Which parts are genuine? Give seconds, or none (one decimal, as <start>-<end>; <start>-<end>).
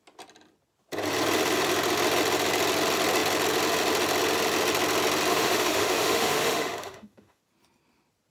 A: 0.0-5.3; 7.4-8.3